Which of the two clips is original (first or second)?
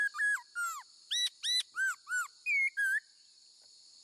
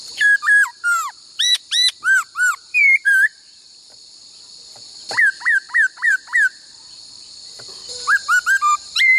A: first